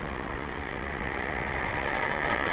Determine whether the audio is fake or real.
fake